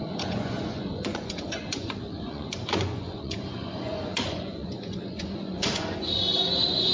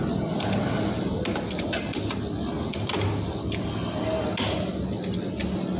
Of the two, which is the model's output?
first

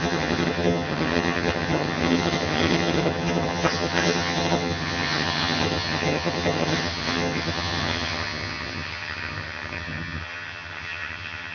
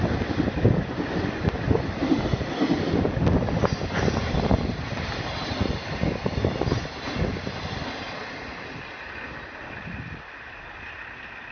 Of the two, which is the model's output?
first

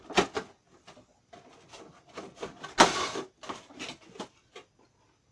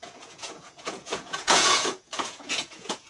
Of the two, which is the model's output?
second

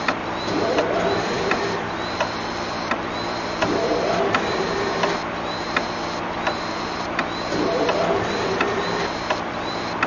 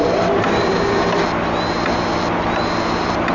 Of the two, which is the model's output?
first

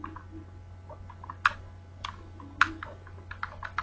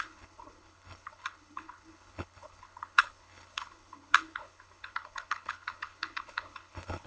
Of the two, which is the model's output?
second